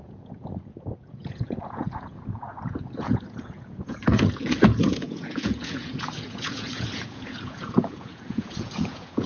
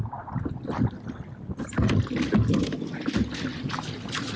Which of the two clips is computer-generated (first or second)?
first